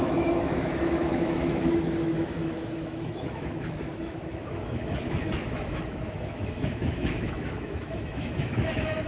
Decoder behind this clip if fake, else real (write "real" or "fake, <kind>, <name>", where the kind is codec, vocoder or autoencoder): fake, autoencoder, DAC-VAE